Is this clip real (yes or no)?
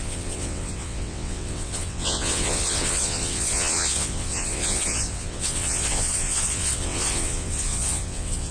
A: no